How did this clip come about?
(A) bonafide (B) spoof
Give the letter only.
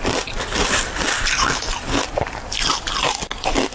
A